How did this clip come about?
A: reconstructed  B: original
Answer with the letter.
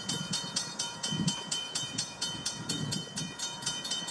A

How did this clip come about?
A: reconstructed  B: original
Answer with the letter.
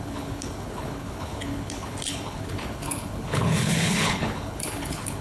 A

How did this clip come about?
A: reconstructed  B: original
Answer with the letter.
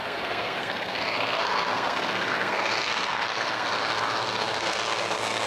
A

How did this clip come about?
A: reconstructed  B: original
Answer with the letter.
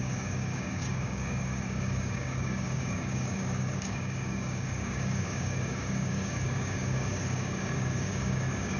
A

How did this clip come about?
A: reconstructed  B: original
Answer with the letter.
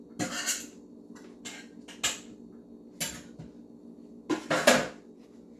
B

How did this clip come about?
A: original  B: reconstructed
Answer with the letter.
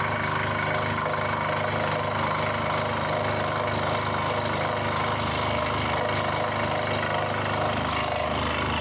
A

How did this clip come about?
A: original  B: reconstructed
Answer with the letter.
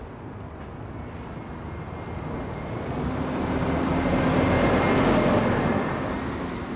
A